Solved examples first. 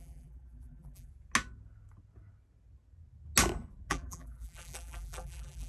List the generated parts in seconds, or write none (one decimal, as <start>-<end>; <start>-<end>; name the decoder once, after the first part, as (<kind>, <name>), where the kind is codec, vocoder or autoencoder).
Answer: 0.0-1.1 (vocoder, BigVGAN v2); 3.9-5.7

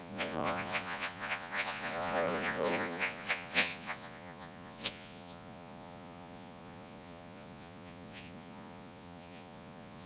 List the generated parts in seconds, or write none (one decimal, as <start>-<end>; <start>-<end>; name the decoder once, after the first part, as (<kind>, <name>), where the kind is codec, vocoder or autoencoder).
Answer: 0.0-10.1 (vocoder, Vocos)

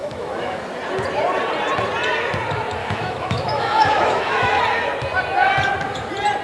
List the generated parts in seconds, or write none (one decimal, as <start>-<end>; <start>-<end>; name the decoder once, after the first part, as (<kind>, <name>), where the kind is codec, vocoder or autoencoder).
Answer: 0.0-0.6 (autoencoder, DAC-VAE); 2.8-4.6

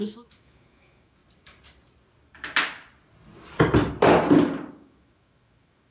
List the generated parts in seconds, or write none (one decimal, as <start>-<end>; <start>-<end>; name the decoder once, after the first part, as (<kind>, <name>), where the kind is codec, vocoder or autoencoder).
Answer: 0.0-1.2 (autoencoder, DAC-VAE); 4.7-5.9

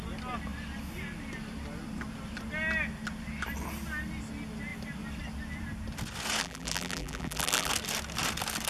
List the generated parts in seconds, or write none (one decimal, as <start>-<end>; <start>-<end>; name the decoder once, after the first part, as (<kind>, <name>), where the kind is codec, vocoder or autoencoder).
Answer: 6.4-7.7 (vocoder, BigVGAN v2)